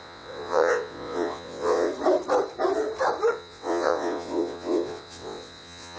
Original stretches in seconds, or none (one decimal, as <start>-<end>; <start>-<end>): 1.9-3.3